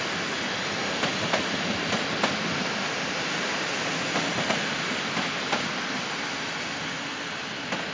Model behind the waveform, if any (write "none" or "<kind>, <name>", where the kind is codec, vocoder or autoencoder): none